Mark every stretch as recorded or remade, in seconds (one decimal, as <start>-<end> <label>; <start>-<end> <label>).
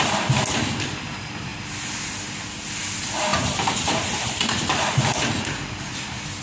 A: 0.0-3.3 recorded; 3.3-4.9 remade; 4.9-6.4 recorded